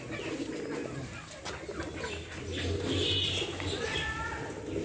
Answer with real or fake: real